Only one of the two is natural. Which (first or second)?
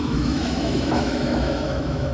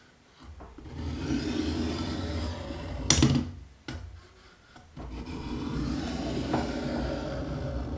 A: second